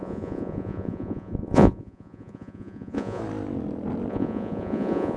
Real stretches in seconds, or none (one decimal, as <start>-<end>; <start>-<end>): 3.2-4.1